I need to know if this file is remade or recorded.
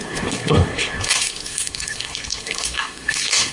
remade